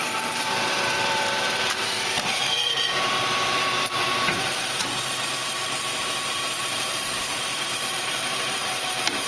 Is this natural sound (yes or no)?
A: no